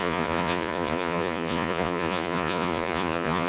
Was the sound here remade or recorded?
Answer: remade